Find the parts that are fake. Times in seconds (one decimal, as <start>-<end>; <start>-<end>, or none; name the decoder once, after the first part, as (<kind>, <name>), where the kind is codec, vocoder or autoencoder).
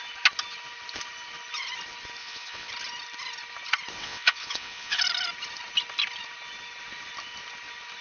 2.2-2.7 (vocoder, WaveNeXt); 4.0-5.0